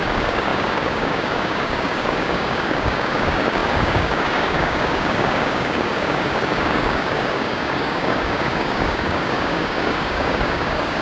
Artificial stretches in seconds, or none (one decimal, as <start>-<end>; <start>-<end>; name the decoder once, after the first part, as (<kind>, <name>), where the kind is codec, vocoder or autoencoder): 0.0-11.0 (codec, DAC)